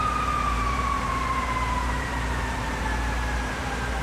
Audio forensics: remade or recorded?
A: remade